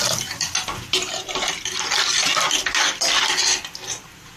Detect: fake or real real